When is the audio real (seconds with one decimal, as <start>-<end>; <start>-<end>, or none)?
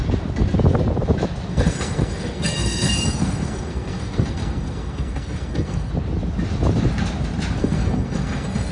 0.0-1.5; 5.9-7.6